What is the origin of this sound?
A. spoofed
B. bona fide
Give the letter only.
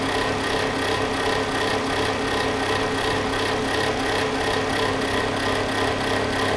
B